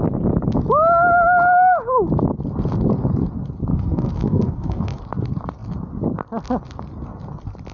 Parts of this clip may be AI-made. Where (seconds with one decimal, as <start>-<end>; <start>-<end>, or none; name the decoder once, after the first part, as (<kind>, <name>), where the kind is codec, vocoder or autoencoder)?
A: 3.7-5.0 (codec, SNAC)